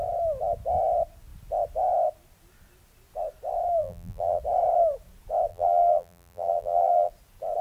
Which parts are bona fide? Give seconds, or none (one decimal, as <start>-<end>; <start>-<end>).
0.0-3.8; 4.4-5.5; 7.1-7.6

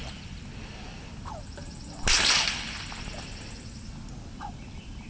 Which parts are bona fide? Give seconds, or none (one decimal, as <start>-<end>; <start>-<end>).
3.1-5.1

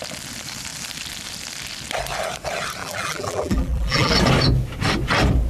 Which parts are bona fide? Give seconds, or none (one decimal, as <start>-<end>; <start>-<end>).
0.0-2.8; 4.1-5.5